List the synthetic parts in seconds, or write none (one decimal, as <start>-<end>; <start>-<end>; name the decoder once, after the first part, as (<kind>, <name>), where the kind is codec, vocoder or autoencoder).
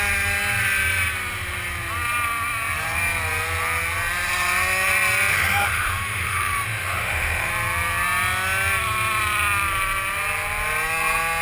5.3-7.5 (autoencoder, DAC-VAE)